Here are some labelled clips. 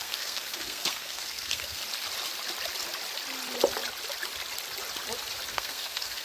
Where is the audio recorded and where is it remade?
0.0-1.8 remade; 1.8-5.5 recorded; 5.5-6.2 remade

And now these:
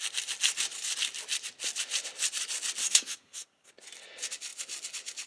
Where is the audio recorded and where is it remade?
0.0-2.8 recorded; 2.8-3.7 remade; 3.7-5.3 recorded

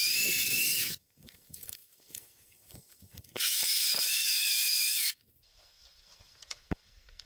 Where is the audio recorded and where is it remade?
0.0-7.3 remade

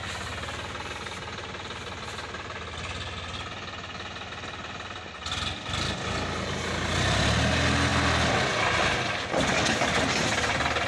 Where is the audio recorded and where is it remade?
0.0-10.9 recorded

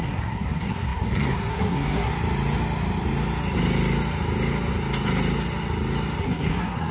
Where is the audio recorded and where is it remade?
0.0-2.1 remade; 2.1-6.2 recorded; 6.2-6.9 remade

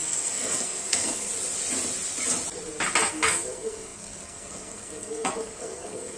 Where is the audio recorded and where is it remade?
0.0-1.3 remade; 1.3-3.1 recorded; 3.1-6.2 remade